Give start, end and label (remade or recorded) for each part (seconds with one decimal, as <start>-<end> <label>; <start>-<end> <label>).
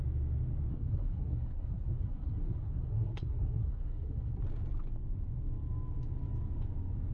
0.0-0.7 recorded; 0.7-4.4 remade; 4.4-7.1 recorded